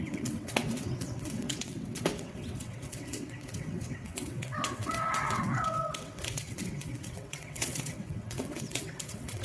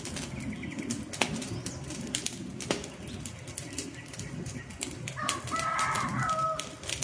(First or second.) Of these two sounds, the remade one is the first